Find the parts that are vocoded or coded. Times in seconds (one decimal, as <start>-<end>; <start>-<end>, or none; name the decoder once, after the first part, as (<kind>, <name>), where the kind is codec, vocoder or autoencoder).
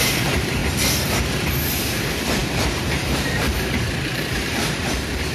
0.0-0.6 (vocoder, BigVGAN v2); 1.8-5.3